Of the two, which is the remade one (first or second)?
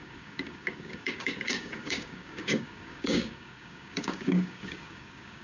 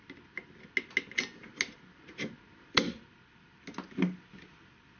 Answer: first